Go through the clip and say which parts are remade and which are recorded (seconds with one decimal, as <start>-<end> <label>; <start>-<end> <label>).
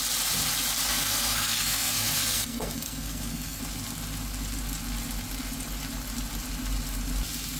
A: 0.0-0.9 recorded; 0.9-3.6 remade; 3.6-7.6 recorded